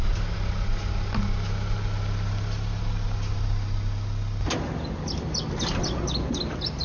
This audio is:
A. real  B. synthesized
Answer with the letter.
A